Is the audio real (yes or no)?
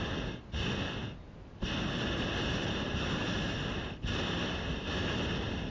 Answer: yes